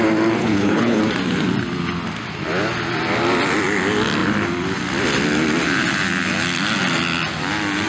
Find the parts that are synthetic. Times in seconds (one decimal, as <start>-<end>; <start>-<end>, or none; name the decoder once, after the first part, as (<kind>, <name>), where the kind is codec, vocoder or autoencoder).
0.4-1.0 (codec, HILCodec)